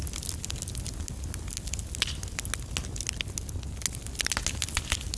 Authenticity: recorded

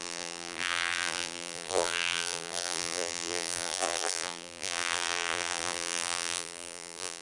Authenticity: remade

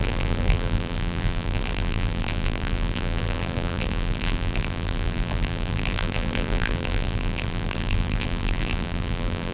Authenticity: remade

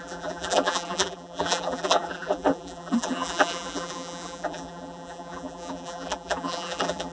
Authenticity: remade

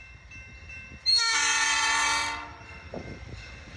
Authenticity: remade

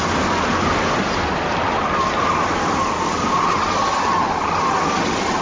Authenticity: recorded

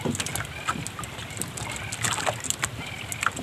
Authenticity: recorded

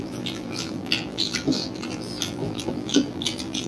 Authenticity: remade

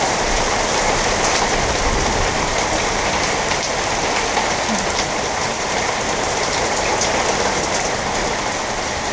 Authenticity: remade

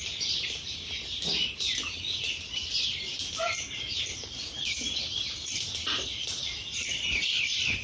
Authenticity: remade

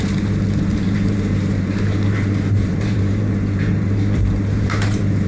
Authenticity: remade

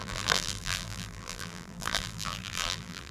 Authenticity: remade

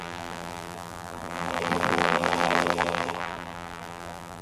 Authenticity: remade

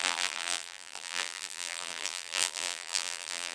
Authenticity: remade